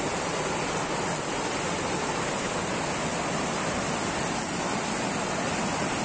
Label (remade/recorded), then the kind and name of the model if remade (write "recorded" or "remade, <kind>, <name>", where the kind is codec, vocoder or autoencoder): recorded